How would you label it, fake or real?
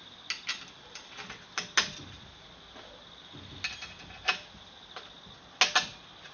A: real